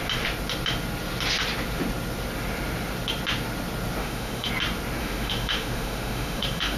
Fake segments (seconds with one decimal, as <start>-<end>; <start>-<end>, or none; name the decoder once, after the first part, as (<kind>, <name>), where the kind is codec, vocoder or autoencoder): 4.0-4.5 (autoencoder, DAC-VAE); 5.0-6.8